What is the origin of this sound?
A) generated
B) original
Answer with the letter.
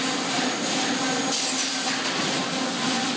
B